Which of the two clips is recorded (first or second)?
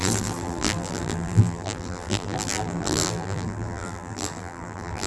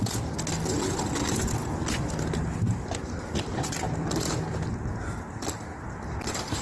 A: second